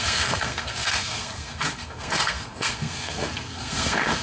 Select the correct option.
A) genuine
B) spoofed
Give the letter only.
B